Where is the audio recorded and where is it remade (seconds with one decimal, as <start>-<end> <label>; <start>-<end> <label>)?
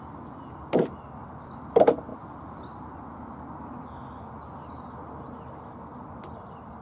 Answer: 0.0-6.8 recorded